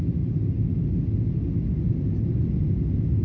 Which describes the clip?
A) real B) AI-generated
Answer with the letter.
A